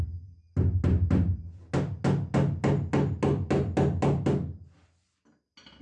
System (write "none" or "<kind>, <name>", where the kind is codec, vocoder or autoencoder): none